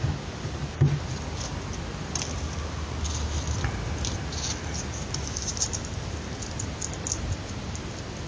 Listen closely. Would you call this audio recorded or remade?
recorded